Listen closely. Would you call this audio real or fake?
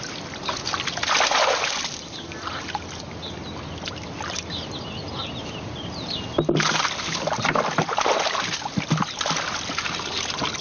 real